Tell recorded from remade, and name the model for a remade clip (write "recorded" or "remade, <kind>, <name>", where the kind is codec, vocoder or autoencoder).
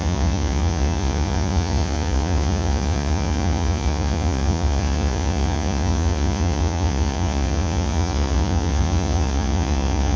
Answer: remade, vocoder, Vocos